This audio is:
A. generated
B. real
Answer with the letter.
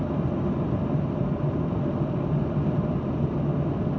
B